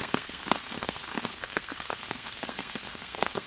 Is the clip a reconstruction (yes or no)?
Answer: yes